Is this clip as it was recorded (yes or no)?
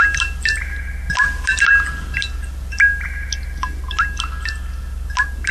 yes